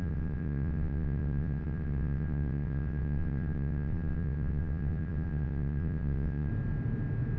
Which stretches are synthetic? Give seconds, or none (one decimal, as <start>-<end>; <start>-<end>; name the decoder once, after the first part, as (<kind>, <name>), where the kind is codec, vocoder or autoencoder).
0.0-6.5 (vocoder, WaveNeXt)